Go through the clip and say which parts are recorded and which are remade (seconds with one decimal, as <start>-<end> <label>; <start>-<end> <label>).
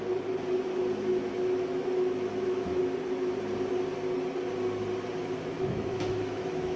0.0-1.1 recorded; 1.1-2.8 remade; 2.8-5.2 recorded; 5.2-6.8 remade